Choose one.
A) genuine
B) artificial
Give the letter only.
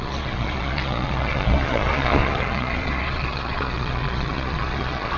B